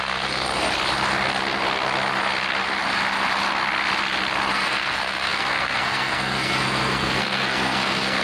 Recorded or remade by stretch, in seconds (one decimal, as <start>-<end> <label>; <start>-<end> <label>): 0.0-0.5 remade; 0.5-4.5 recorded; 4.5-8.2 remade